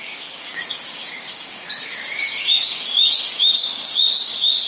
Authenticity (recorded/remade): remade